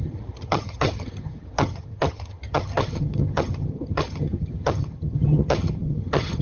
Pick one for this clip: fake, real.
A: fake